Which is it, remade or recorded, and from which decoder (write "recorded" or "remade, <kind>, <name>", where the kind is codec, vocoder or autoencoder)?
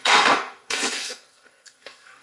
remade, codec, SNAC